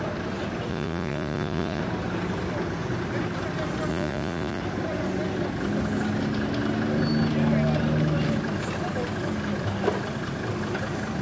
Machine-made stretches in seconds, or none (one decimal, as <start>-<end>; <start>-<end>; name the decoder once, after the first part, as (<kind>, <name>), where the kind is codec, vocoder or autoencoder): 0.7-1.8 (vocoder, Vocos); 3.9-4.6